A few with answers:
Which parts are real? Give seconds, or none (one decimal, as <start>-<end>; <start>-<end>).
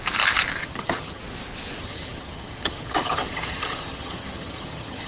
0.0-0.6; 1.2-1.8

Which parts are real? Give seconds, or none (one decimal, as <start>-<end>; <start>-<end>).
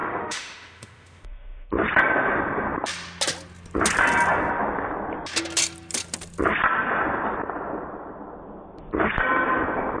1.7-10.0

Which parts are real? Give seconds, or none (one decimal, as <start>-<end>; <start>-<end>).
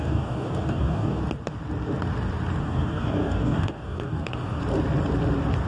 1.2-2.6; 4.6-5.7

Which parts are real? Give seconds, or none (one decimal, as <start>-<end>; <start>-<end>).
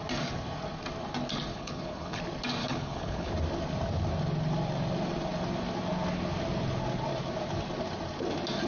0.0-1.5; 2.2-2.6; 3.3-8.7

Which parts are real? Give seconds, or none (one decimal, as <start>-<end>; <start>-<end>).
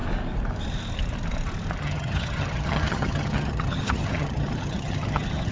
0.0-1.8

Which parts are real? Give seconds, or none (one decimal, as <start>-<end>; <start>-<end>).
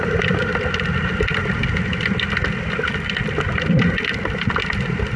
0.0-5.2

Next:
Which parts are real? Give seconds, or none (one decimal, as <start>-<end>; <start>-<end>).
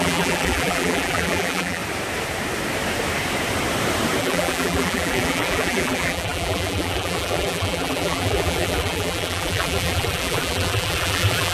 1.8-4.2